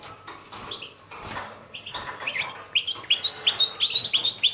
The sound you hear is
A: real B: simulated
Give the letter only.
A